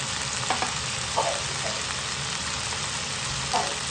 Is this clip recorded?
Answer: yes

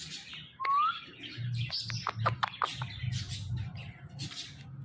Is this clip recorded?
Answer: yes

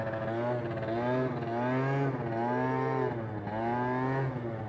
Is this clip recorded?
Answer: yes